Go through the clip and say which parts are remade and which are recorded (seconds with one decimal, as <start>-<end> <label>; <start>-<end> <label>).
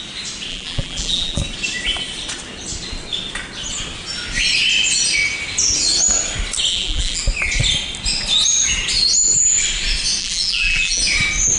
0.0-0.5 recorded; 0.5-1.4 remade; 1.4-6.7 recorded; 6.7-7.2 remade; 7.2-10.2 recorded; 10.2-11.0 remade; 11.0-11.6 recorded